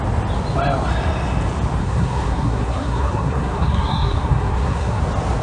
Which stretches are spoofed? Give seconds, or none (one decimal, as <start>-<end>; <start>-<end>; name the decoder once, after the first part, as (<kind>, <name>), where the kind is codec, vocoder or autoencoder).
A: 1.8-5.0 (codec, SNAC)